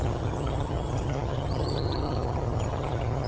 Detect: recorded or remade remade